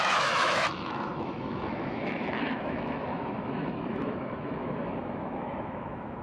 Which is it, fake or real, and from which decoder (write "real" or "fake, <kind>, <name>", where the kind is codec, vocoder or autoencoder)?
fake, autoencoder, DAC-VAE